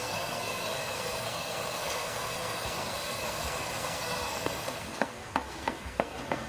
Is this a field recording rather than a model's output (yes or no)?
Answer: no